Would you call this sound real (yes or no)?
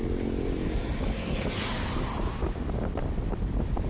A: yes